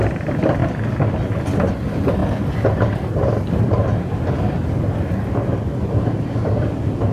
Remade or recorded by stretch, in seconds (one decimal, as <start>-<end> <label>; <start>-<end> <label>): 0.0-0.6 remade; 0.6-1.7 recorded; 1.7-2.2 remade; 2.2-3.1 recorded; 3.1-3.9 remade; 3.9-5.3 recorded; 5.3-7.1 remade